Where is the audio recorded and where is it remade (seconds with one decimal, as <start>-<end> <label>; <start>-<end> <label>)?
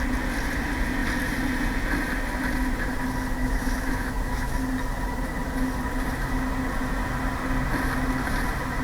0.0-3.4 recorded; 3.4-4.6 remade; 4.6-8.8 recorded